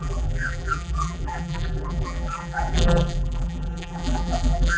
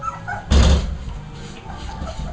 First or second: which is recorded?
second